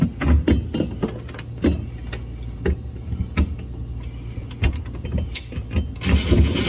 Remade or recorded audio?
recorded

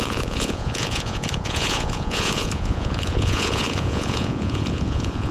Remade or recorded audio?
remade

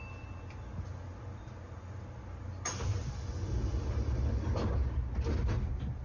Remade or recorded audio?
recorded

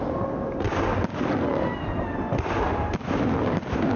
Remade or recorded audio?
recorded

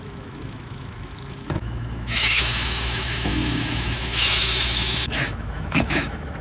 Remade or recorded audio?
remade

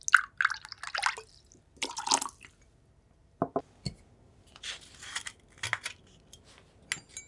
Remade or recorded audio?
recorded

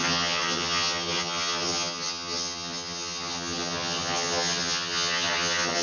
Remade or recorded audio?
remade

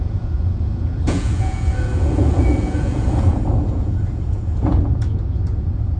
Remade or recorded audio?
remade